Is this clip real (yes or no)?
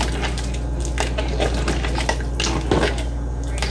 yes